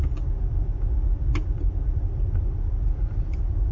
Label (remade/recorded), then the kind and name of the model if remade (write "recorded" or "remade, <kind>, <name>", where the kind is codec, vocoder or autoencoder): recorded